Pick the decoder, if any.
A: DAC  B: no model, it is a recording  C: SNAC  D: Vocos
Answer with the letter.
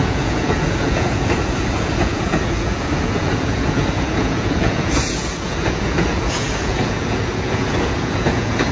D